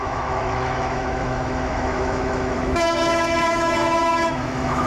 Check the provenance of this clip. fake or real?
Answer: fake